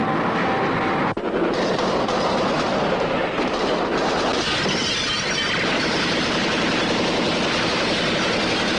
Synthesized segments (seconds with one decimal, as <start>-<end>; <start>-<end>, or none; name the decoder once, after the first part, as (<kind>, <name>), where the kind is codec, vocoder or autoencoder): none

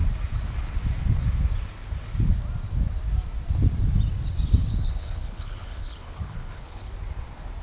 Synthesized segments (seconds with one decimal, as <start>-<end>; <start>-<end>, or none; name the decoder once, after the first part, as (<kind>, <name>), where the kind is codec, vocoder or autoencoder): 4.6-6.9 (codec, HILCodec)

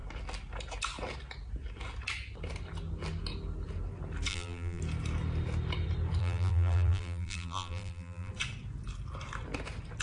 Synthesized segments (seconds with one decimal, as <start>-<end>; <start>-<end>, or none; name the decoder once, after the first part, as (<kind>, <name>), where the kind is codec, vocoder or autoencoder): 4.3-4.8 (vocoder, BigVGAN v2); 6.2-8.3

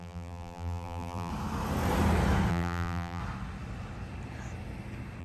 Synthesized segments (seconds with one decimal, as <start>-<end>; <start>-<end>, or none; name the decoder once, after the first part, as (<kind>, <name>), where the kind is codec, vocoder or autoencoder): 0.0-1.3 (vocoder, BigVGAN v2); 2.5-3.2

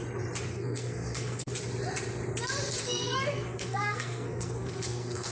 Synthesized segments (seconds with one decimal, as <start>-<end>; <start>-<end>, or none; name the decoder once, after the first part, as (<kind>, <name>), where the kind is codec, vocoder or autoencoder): 0.5-1.5 (codec, SNAC); 2.8-5.3